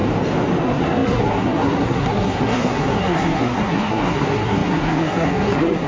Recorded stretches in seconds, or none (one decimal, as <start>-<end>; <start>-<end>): 0.0-0.6